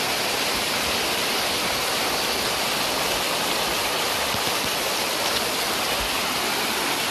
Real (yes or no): yes